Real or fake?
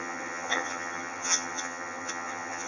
fake